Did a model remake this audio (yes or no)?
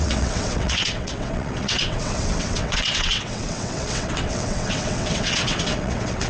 yes